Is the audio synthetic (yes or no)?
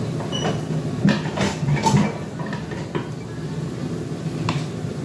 no